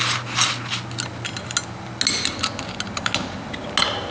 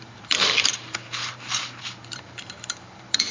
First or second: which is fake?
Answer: second